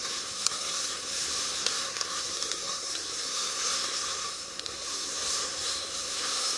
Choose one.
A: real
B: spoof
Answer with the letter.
B